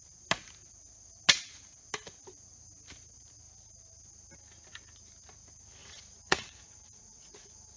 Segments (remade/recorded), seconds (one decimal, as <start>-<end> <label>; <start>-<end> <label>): 0.0-5.8 recorded; 5.8-7.8 remade